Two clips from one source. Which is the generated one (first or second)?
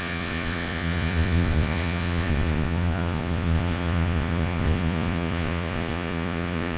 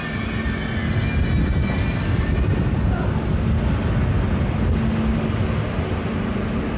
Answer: first